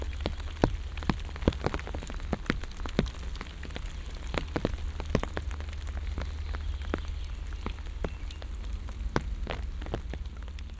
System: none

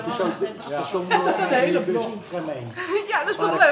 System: vocoder, BigVGAN v2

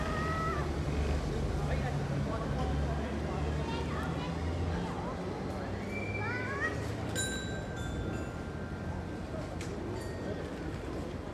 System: none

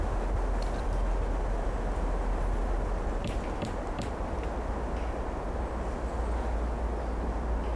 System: none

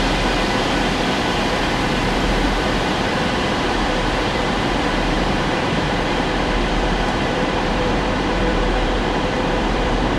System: vocoder, BigVGAN v2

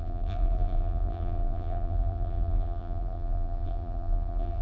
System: vocoder, BigVGAN v2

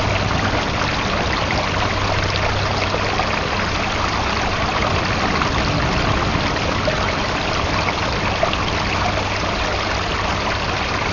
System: none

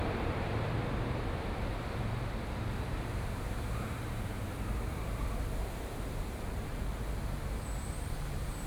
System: vocoder, BigVGAN v2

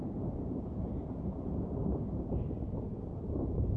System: vocoder, BigVGAN v2